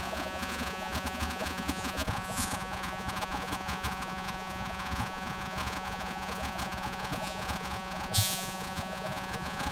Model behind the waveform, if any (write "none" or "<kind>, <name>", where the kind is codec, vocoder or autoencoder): vocoder, Vocos